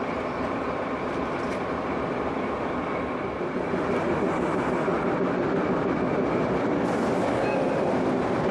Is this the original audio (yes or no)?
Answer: yes